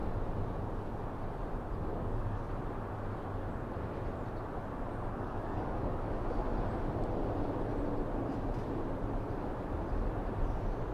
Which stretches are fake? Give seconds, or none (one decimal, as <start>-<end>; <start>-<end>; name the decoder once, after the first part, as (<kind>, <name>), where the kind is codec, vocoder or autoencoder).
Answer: 1.9-2.5 (codec, DAC); 5.1-6.4